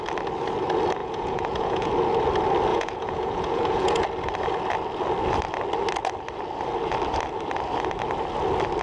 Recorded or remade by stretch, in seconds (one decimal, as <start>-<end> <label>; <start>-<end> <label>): 0.0-1.0 recorded; 1.0-1.9 remade; 1.9-2.7 recorded; 2.7-4.0 remade; 4.0-8.8 recorded